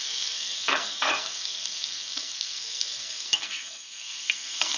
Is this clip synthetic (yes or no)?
yes